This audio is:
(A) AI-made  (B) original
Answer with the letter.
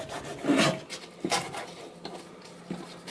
B